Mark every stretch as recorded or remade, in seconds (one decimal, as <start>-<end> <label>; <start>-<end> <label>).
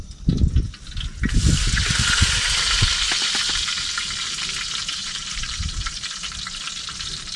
0.0-5.0 recorded; 5.0-6.0 remade; 6.0-7.4 recorded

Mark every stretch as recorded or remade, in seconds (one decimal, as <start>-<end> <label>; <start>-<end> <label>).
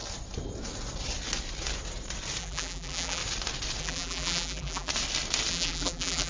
0.0-2.4 recorded; 2.4-3.2 remade; 3.2-3.8 recorded; 3.8-4.9 remade; 4.9-5.5 recorded; 5.5-6.3 remade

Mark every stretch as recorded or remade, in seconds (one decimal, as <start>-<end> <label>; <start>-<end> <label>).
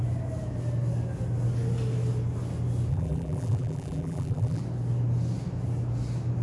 0.0-2.9 recorded; 2.9-4.6 remade; 4.6-6.4 recorded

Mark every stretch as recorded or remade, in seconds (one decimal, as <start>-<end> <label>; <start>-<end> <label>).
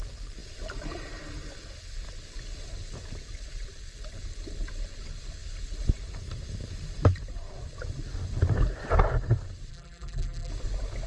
0.0-9.7 recorded; 9.7-10.5 remade; 10.5-11.1 recorded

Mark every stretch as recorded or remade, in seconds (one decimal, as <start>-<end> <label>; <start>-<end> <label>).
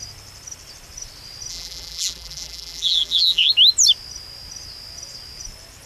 0.0-1.5 recorded; 1.5-3.5 remade; 3.5-5.9 recorded